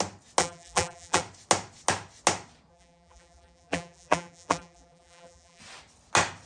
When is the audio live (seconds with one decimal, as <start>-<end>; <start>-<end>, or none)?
0.0-0.4; 1.2-2.7; 5.6-6.5